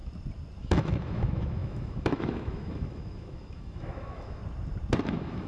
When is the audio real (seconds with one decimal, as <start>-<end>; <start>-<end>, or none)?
0.0-0.6; 4.4-5.0